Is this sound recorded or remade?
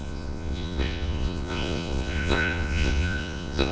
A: remade